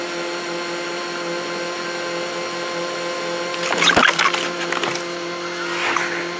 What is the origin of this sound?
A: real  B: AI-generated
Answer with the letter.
A